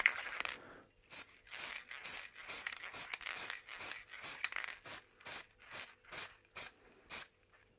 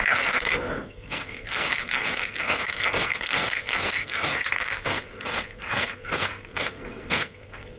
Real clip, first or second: first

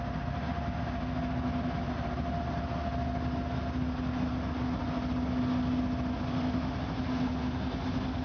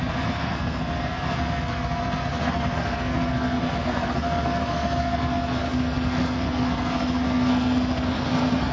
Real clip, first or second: first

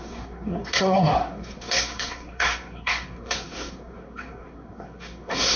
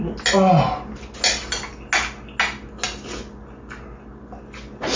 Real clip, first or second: second